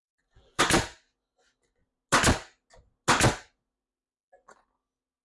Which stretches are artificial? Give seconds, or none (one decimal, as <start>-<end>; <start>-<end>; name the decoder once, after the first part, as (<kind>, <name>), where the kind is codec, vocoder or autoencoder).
0.0-0.6 (vocoder, BigVGAN v2)